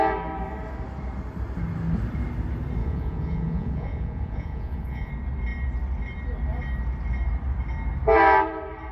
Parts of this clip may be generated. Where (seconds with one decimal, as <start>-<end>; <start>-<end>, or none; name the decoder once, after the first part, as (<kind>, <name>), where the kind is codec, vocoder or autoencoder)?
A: 2.8-5.1 (vocoder, Vocos)